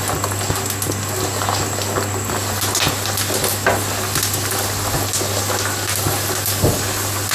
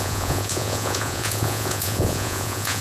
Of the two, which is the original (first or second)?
first